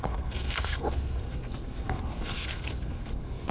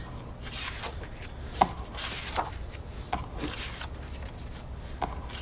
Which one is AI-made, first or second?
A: first